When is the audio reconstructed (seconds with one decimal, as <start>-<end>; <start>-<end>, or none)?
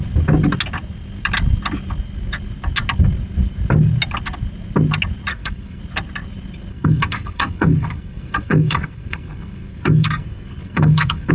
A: 5.3-5.8; 6.7-11.3